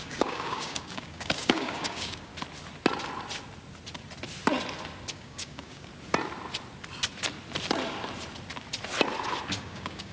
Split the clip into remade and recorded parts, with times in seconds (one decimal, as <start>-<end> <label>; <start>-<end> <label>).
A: 0.0-2.3 remade; 2.3-5.1 recorded; 5.1-5.9 remade; 5.9-9.6 recorded; 9.6-10.1 remade